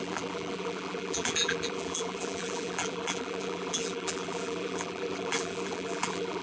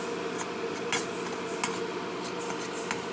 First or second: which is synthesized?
first